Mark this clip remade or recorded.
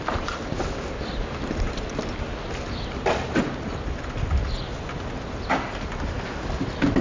recorded